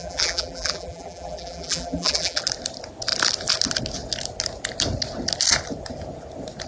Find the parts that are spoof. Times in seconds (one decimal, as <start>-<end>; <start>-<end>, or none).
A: 0.0-2.4